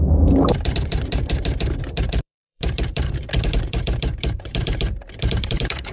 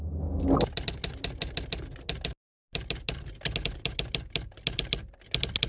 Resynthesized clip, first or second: first